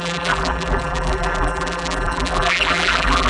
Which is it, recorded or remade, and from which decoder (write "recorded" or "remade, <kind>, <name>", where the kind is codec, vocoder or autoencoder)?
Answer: remade, vocoder, BigVGAN v2